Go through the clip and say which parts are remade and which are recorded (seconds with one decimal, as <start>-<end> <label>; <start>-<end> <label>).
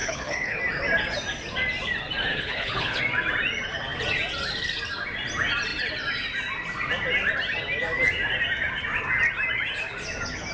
0.0-0.6 remade; 0.6-2.3 recorded; 2.3-3.0 remade; 3.0-10.5 recorded